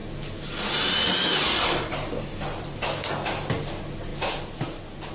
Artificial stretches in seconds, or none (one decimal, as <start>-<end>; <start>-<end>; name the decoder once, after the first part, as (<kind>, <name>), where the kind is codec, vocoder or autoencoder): none